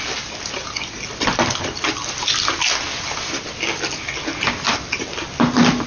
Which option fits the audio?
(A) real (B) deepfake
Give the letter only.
A